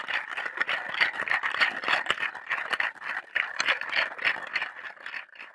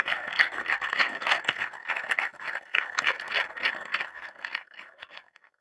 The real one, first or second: first